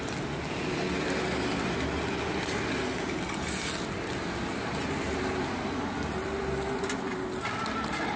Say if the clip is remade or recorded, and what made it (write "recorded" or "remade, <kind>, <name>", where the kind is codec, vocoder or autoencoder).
recorded